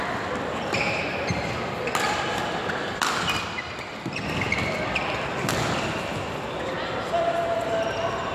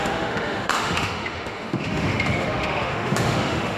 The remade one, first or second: second